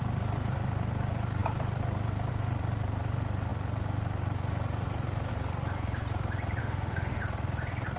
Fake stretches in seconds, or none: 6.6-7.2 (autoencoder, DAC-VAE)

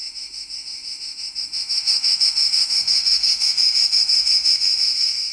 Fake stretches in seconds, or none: 0.0-5.3 (autoencoder, DAC-VAE)